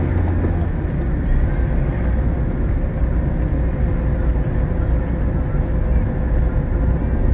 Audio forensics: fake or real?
real